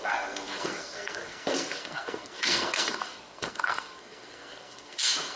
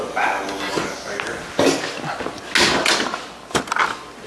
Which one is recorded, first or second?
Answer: second